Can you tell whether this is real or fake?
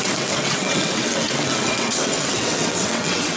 fake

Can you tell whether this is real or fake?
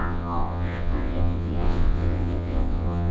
fake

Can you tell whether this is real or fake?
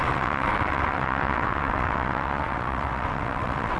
fake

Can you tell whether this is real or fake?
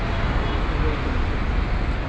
real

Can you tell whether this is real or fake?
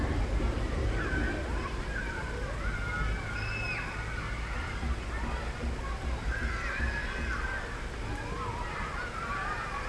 real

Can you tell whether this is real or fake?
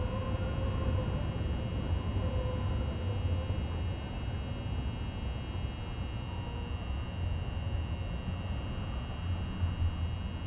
real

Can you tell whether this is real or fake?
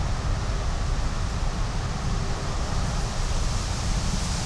real